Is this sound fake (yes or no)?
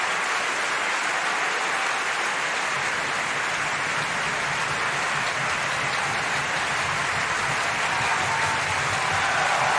no